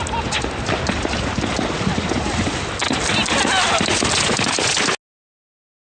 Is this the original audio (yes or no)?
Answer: yes